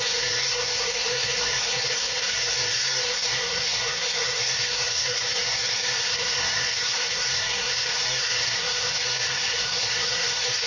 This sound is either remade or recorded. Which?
remade